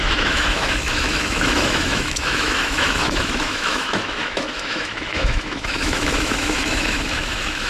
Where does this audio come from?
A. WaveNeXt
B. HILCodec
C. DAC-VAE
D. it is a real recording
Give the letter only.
C